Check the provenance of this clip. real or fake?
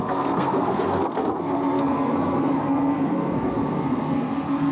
fake